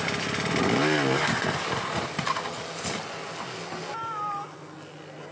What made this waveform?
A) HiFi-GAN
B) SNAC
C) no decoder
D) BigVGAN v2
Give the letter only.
C